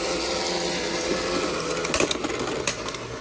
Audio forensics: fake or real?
real